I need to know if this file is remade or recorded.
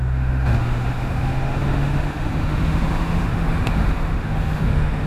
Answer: remade